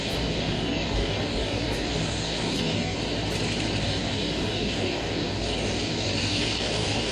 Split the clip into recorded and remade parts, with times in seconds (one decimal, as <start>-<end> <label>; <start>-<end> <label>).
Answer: 0.0-3.0 remade; 3.0-3.8 recorded; 3.8-7.1 remade